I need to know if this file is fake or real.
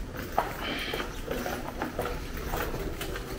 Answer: real